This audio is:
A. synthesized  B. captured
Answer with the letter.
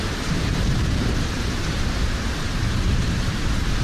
A